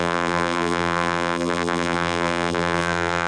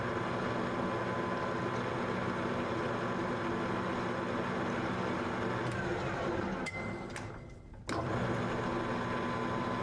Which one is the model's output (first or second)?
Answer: first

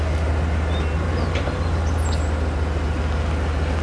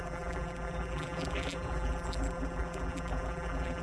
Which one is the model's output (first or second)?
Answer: second